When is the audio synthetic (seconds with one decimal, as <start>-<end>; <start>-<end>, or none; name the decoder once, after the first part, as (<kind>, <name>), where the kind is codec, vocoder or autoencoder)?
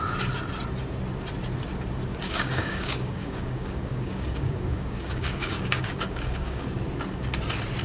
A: 2.1-6.8 (codec, DAC)